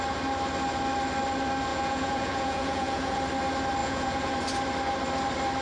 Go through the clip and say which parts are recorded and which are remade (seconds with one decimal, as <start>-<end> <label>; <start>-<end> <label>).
0.0-1.7 recorded; 1.7-3.2 remade; 3.2-3.8 recorded; 3.8-4.3 remade; 4.3-5.6 recorded